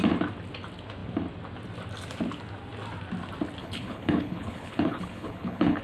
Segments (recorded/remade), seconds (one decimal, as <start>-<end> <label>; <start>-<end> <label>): 0.0-3.6 recorded; 3.6-5.8 remade